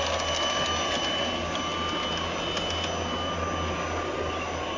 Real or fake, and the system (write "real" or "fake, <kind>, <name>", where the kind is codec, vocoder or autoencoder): real